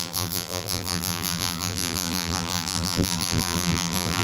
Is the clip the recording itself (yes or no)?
no